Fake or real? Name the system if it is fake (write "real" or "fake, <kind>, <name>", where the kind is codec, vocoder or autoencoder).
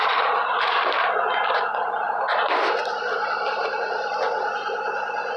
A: real